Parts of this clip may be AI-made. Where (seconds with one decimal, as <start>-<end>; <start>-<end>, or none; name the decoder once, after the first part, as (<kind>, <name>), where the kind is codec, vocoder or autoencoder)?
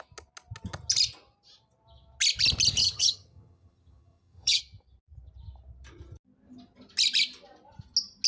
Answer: 2.8-4.6 (vocoder, HiFi-GAN)